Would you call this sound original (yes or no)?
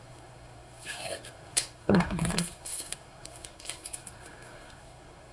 no